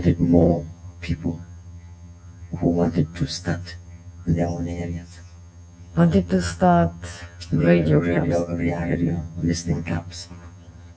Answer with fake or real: fake